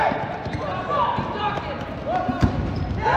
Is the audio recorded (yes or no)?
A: yes